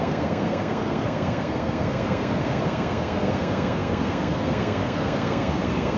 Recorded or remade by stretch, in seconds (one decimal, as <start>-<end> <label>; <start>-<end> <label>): 0.0-6.0 remade

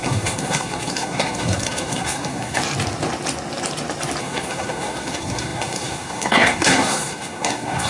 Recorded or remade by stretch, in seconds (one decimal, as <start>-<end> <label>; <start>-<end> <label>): 0.0-2.6 remade; 2.6-4.2 recorded; 4.2-7.9 remade

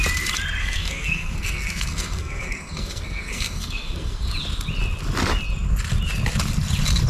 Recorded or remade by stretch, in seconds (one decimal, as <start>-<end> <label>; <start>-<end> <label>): 0.0-0.6 recorded; 0.6-4.3 remade; 4.3-7.1 recorded

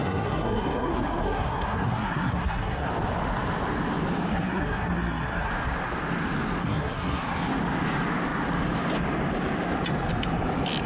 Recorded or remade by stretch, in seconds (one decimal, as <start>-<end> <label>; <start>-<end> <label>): 0.0-2.9 remade; 2.9-4.3 recorded; 4.3-5.5 remade; 5.5-6.6 recorded; 6.6-7.2 remade; 7.2-10.9 recorded

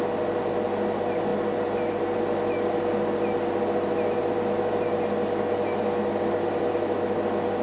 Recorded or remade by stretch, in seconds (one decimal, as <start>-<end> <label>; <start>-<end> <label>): 0.0-7.6 recorded

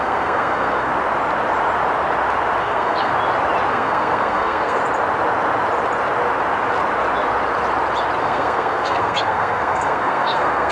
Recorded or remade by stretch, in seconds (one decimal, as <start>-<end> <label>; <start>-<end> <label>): 0.0-0.9 remade; 0.9-2.6 recorded; 2.6-3.1 remade; 3.1-3.7 recorded; 3.7-4.8 remade; 4.8-8.2 recorded; 8.2-10.7 remade

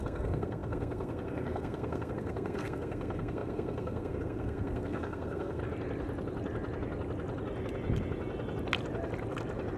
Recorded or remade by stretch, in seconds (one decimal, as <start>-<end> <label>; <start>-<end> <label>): 0.0-5.6 remade; 5.6-9.8 recorded